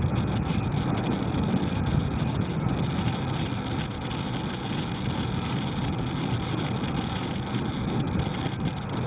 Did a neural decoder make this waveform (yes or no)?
no